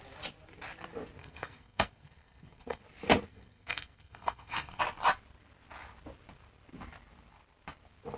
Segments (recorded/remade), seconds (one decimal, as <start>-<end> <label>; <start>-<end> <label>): 0.0-1.2 recorded; 1.2-2.8 remade; 2.8-3.3 recorded; 3.3-4.8 remade; 4.8-8.2 recorded